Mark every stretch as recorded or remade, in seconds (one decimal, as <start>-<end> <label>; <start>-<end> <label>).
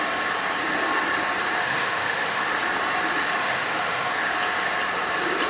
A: 0.0-1.6 recorded; 1.6-2.4 remade; 2.4-3.4 recorded; 3.4-4.1 remade; 4.1-5.5 recorded